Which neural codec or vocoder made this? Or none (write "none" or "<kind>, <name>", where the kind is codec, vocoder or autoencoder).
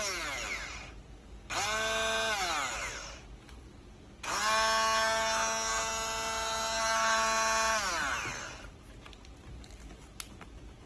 none